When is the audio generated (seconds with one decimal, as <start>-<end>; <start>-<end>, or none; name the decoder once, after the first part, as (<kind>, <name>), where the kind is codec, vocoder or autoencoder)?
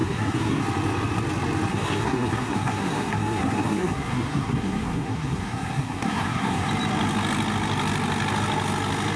0.0-0.6 (codec, SNAC); 1.7-6.7